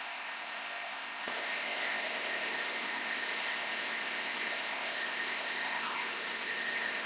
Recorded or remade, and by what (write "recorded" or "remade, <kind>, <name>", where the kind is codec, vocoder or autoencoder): remade, codec, ZipCodec